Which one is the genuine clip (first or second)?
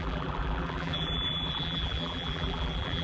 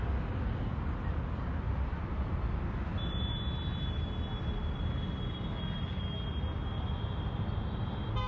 second